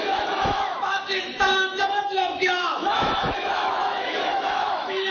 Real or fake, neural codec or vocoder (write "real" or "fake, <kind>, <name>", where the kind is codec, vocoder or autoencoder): fake, autoencoder, DAC-VAE